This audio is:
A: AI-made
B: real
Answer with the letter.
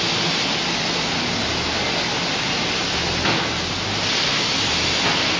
B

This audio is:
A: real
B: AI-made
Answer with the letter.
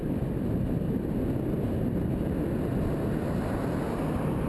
A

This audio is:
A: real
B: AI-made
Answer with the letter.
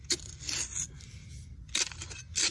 A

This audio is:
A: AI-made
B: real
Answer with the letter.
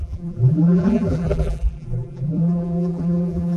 A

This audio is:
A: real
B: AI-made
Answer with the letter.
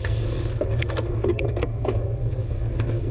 B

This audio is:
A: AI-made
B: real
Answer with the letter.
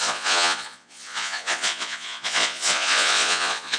A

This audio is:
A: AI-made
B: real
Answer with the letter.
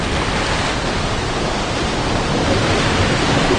B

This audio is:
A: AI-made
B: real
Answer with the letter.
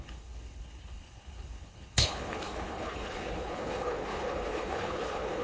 A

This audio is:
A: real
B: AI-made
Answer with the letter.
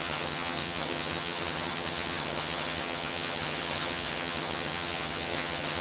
B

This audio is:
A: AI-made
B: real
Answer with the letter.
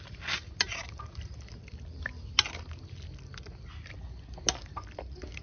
B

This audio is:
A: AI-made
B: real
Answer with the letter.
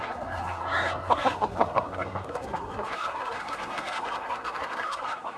A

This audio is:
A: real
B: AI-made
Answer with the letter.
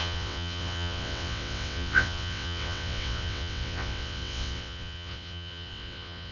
B